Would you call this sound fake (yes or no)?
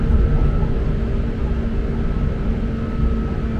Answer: no